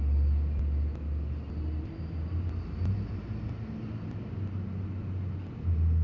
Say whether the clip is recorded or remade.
recorded